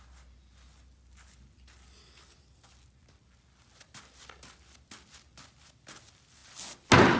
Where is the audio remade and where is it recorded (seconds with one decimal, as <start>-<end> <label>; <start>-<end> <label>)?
0.0-7.2 recorded